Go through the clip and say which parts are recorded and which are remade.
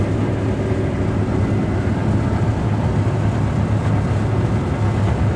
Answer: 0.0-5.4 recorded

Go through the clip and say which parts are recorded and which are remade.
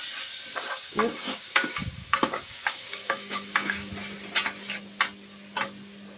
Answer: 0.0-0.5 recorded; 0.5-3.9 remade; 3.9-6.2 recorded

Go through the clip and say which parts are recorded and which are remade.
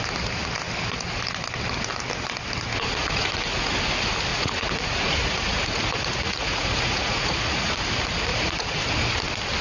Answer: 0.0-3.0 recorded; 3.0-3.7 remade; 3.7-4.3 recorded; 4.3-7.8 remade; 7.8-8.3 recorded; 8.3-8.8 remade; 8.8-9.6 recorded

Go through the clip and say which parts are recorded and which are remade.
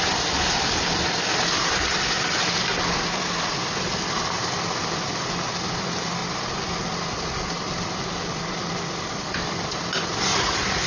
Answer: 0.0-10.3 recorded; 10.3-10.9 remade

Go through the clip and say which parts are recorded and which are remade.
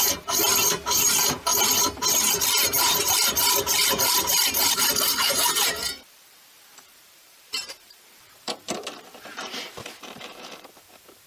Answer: 0.0-1.5 remade; 1.5-2.4 recorded; 2.4-11.3 remade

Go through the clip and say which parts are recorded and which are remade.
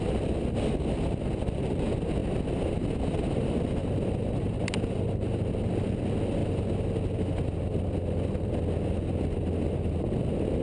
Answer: 0.0-10.6 recorded